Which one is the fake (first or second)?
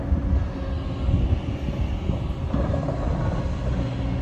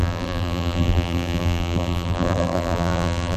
second